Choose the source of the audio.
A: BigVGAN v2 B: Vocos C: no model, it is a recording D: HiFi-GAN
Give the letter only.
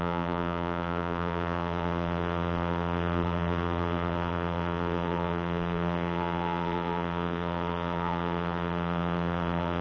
A